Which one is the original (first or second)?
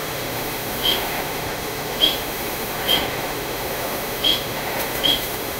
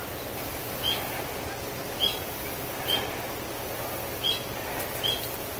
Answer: second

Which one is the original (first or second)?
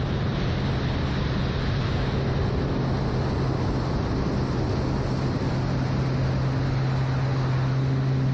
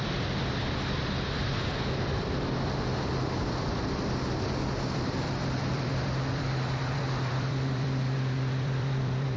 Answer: first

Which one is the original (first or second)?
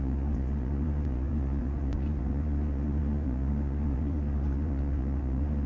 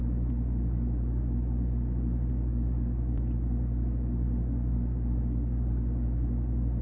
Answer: second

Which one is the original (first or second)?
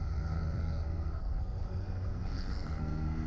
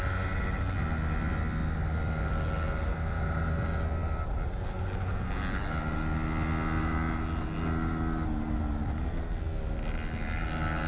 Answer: second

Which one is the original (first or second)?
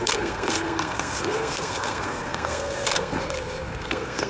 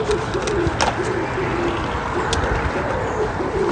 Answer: second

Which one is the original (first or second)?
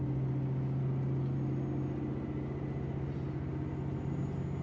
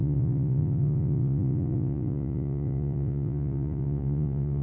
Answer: first